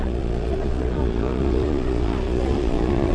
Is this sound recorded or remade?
remade